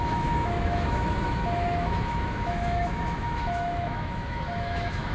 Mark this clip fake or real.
fake